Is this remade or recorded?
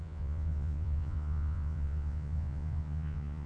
remade